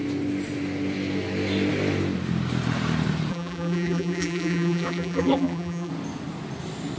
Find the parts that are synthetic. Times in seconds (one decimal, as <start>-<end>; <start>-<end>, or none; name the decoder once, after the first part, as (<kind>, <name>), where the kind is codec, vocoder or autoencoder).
3.3-5.9 (vocoder, BigVGAN v2)

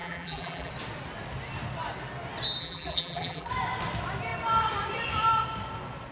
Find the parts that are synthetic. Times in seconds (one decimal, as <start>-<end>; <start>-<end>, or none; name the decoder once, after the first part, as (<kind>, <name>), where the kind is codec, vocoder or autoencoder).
0.0-0.7 (vocoder, BigVGAN v2); 2.6-3.5

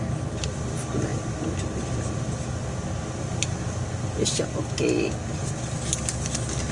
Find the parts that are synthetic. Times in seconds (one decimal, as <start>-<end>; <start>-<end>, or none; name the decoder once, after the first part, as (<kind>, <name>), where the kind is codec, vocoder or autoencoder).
none

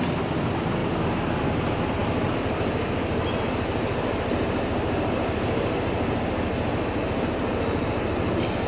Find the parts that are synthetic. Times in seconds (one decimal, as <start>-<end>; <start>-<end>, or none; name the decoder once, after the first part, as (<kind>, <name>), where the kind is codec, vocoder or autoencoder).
0.8-1.4 (vocoder, BigVGAN v2)

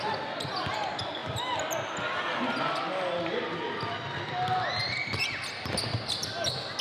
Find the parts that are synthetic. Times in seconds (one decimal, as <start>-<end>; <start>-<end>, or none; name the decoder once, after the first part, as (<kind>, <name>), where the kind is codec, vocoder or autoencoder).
none

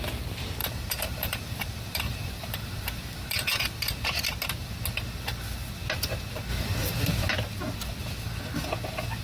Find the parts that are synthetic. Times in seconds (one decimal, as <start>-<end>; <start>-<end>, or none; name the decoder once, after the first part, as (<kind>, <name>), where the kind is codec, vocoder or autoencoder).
0.6-3.6 (vocoder, BigVGAN v2)

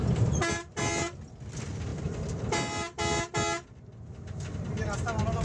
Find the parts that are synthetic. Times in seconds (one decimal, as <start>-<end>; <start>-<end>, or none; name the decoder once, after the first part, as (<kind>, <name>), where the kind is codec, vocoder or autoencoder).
none

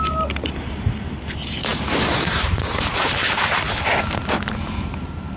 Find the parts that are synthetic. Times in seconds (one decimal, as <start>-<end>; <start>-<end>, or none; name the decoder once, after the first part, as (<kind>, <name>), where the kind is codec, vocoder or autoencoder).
0.0-5.4 (vocoder, BigVGAN v2)